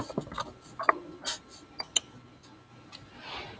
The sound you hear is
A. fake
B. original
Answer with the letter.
B